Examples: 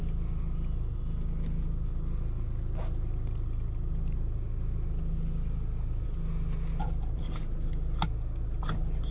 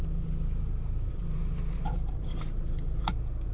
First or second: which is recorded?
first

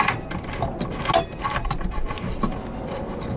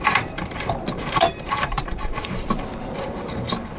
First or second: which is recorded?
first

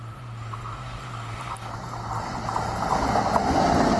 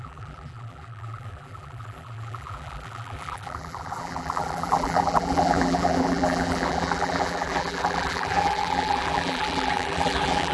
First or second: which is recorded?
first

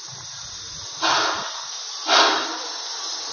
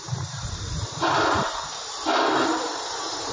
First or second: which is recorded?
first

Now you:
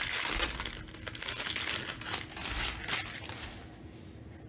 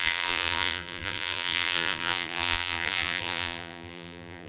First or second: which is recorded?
first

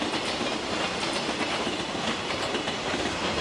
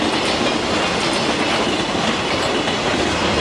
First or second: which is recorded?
second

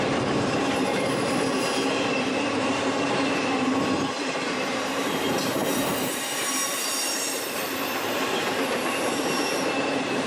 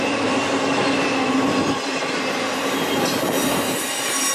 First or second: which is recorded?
second